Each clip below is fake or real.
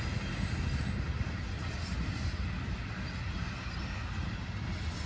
real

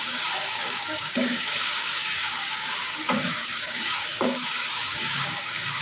fake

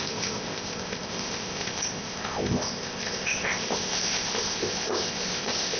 fake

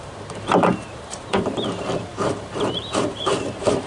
fake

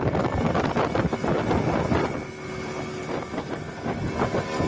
real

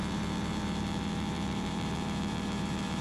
fake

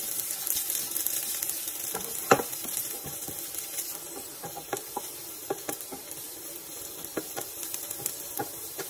fake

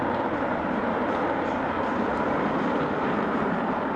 fake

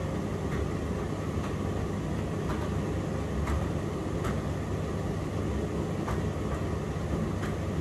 real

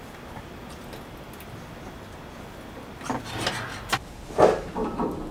real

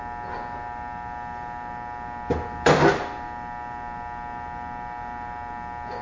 real